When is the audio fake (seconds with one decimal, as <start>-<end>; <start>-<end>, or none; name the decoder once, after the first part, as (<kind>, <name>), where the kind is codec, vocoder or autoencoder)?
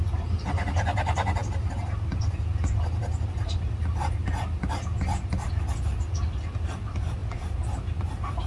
7.2-8.5 (vocoder, BigVGAN v2)